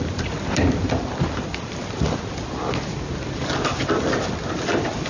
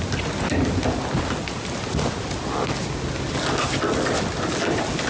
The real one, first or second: second